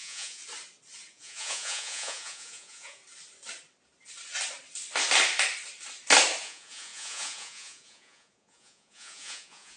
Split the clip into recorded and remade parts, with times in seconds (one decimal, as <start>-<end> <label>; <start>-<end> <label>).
0.0-0.4 remade; 0.4-1.1 recorded; 1.1-3.0 remade; 3.0-6.4 recorded; 6.4-9.8 remade